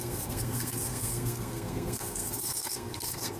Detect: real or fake fake